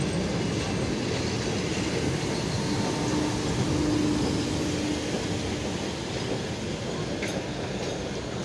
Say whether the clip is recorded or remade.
recorded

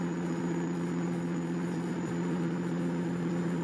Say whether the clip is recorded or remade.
remade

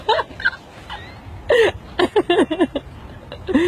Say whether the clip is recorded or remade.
recorded